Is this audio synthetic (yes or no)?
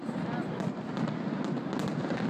no